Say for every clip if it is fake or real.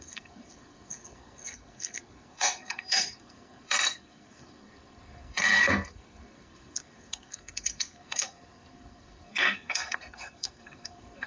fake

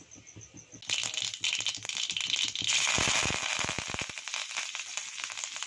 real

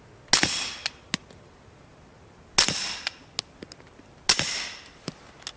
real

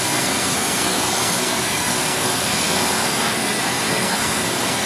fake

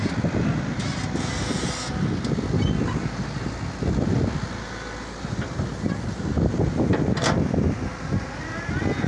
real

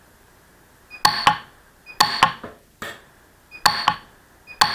real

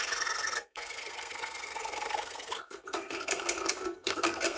fake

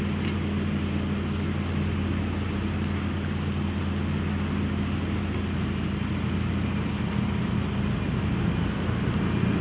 real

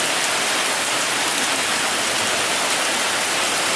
real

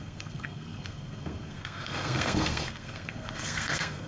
fake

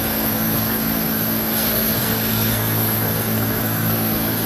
fake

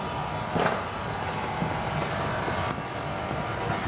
real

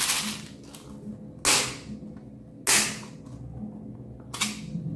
real